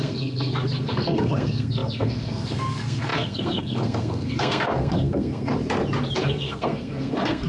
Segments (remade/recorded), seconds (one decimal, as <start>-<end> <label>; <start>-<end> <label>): 0.0-5.5 remade; 5.5-6.2 recorded; 6.2-7.5 remade